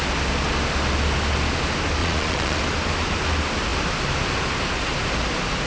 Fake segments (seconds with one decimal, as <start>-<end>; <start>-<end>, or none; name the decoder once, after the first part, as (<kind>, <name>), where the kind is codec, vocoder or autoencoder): 2.0-2.6 (vocoder, Vocos)